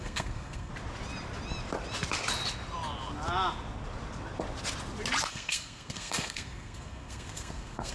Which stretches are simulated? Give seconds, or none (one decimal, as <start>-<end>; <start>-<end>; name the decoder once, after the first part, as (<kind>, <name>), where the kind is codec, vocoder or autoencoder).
0.0-0.7 (codec, SNAC); 5.3-7.9